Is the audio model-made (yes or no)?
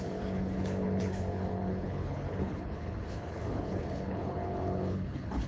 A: yes